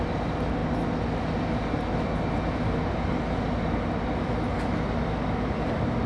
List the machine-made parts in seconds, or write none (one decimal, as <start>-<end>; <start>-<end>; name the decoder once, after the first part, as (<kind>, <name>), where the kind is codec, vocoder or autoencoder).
none